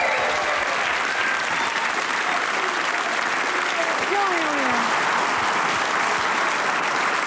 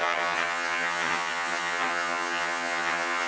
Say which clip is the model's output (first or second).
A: second